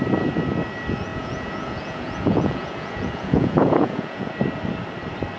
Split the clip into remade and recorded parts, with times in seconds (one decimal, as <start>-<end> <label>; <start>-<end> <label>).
0.0-1.1 recorded; 1.1-4.3 remade; 4.3-5.4 recorded